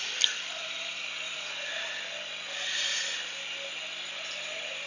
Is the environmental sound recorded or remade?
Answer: recorded